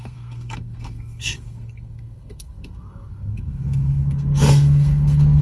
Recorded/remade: remade